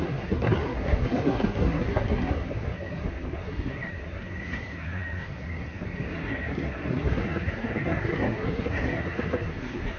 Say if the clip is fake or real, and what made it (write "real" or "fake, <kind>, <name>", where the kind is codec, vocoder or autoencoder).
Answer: fake, codec, SNAC